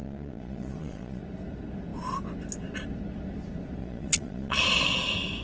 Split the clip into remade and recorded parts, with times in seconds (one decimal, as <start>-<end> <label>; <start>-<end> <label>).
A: 0.0-1.2 remade; 1.2-3.8 recorded; 3.8-4.6 remade; 4.6-5.4 recorded